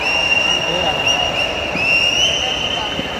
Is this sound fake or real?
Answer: fake